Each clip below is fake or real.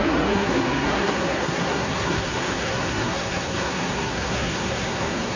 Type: fake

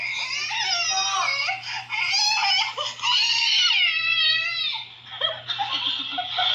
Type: real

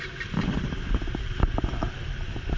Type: real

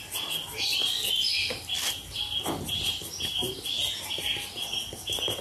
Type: real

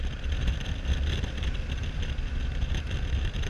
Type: real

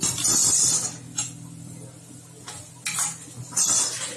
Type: real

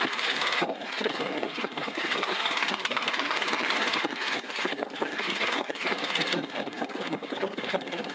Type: fake